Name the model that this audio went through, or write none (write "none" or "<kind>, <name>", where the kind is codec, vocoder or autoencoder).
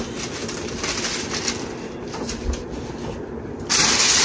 none